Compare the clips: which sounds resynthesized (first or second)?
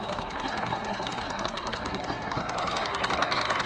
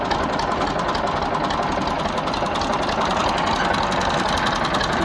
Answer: first